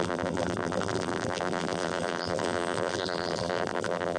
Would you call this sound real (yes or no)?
no